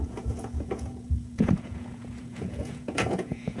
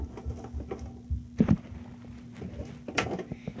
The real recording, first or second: second